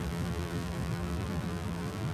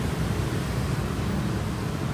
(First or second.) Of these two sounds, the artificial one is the first